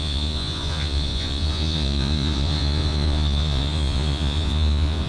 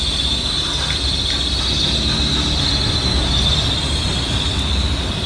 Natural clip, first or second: second